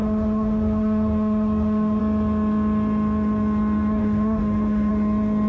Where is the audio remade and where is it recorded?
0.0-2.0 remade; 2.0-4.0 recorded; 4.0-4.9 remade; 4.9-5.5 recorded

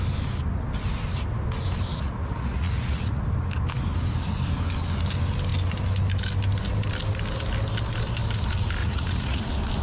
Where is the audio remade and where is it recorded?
0.0-1.9 recorded; 1.9-3.2 remade; 3.2-8.8 recorded; 8.8-9.4 remade; 9.4-9.8 recorded

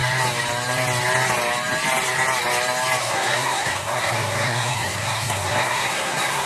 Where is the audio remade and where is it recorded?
0.0-3.0 recorded; 3.0-6.5 remade

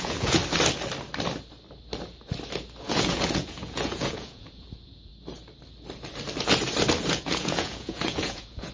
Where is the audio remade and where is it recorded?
0.0-0.4 remade; 0.4-2.8 recorded; 2.8-5.1 remade; 5.1-7.0 recorded; 7.0-8.7 remade

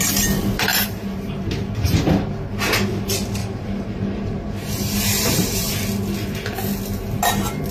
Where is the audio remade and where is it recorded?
0.0-0.7 recorded; 0.7-2.0 remade; 2.0-3.4 recorded; 3.4-5.7 remade; 5.7-7.7 recorded